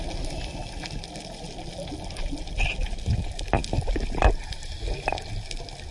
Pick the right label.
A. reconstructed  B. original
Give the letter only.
B